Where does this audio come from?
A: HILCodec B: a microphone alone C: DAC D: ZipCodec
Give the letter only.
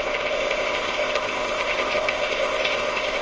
D